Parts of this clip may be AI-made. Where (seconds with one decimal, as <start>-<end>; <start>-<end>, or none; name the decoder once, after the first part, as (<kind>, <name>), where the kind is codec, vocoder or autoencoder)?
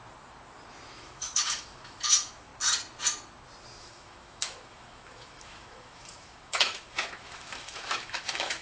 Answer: 0.9-2.5 (autoencoder, DAC-VAE); 3.8-8.6